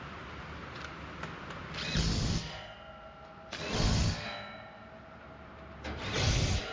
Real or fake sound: real